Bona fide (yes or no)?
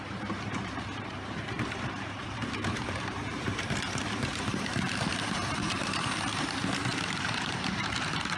no